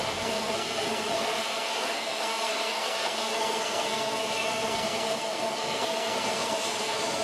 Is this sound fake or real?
fake